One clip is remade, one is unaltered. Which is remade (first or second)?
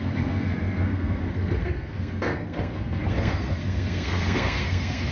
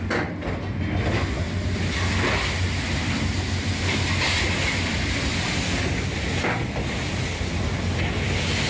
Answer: first